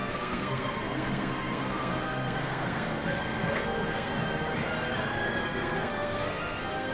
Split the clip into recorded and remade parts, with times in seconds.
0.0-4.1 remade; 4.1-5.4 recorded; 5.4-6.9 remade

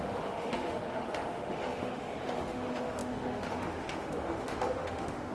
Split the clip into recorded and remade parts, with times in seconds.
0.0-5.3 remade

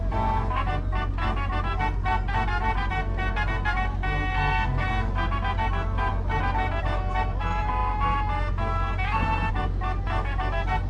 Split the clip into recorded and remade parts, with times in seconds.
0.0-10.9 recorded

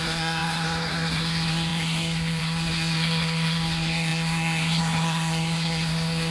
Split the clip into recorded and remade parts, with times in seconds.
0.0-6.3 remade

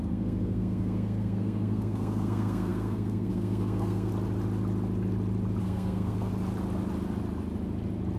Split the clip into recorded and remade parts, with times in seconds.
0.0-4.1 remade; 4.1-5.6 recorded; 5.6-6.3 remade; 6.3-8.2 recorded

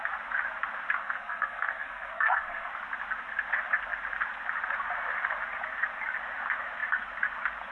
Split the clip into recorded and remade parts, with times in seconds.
0.0-1.0 recorded; 1.0-2.7 remade; 2.7-7.7 recorded